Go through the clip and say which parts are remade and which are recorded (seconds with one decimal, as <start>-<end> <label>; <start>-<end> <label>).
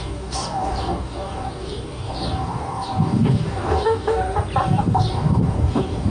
0.0-4.2 remade; 4.2-4.8 recorded; 4.8-6.1 remade